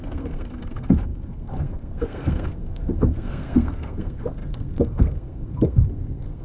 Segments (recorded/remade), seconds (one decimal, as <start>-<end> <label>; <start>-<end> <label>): 0.0-6.4 remade